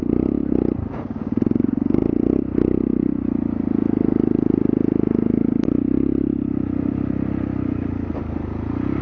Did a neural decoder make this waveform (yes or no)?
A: no